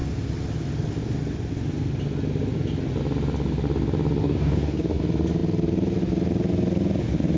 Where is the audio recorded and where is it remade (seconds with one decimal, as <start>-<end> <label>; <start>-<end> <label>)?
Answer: 0.0-4.2 recorded; 4.2-5.0 remade; 5.0-7.4 recorded